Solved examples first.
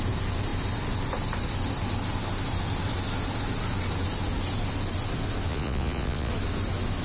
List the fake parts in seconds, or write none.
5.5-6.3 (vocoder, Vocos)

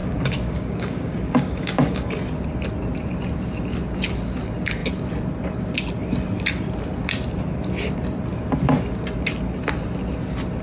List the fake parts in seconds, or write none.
0.0-2.2 (codec, DAC)

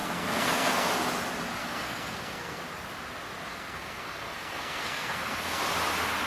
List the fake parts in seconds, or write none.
0.0-0.9 (codec, SNAC); 1.6-2.6; 3.5-5.6

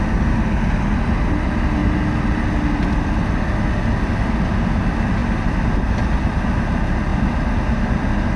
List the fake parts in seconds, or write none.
none